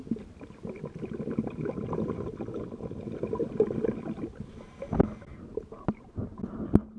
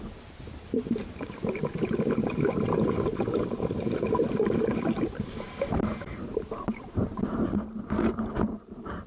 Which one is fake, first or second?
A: second